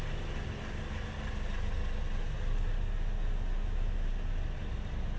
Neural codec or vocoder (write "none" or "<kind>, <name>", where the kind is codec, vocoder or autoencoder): none